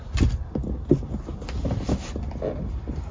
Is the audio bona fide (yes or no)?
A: yes